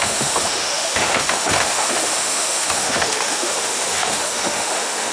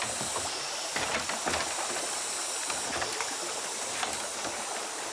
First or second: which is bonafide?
second